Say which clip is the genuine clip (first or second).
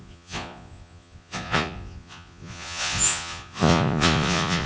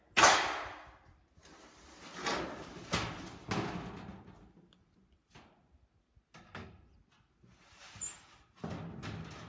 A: second